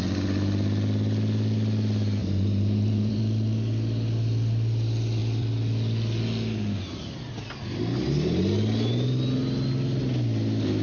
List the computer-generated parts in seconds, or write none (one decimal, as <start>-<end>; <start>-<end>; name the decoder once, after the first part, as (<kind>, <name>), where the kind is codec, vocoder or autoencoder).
2.2-3.2 (vocoder, BigVGAN v2)

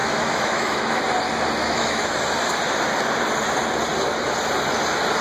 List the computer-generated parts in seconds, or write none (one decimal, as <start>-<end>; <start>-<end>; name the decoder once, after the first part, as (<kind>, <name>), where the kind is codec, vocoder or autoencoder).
0.0-1.0 (autoencoder, DAC-VAE); 1.6-2.2

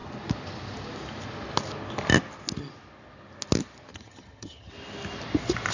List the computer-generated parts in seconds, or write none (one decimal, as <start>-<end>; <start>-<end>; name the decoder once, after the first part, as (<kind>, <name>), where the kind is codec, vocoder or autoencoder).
3.9-4.7 (vocoder, HiFi-GAN)

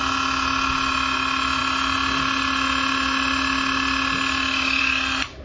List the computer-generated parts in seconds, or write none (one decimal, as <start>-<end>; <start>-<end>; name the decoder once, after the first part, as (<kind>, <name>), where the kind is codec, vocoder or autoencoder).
none

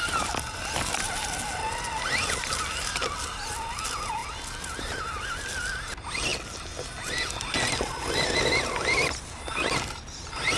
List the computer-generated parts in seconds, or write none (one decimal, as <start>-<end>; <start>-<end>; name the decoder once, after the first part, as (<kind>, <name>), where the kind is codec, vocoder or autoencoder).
none